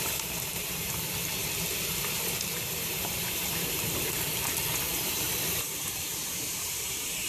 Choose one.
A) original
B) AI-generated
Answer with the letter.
B